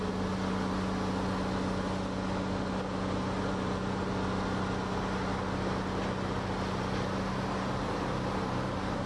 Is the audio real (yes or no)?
yes